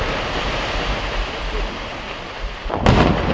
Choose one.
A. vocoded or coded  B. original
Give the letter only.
B